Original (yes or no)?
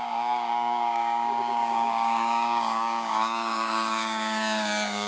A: no